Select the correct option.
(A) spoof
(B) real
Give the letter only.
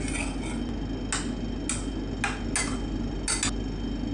B